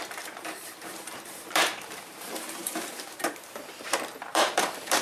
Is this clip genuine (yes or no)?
no